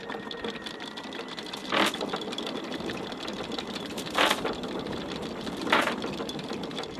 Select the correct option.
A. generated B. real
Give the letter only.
A